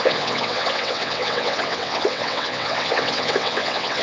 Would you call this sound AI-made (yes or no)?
yes